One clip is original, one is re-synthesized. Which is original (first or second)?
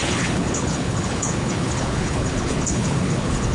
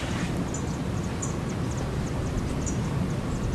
second